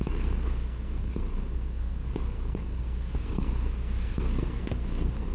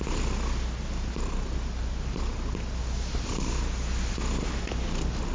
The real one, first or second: second